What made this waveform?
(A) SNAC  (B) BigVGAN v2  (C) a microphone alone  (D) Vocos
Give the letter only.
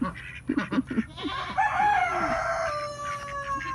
C